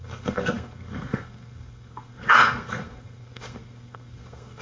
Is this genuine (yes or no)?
no